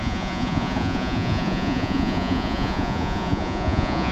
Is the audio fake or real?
fake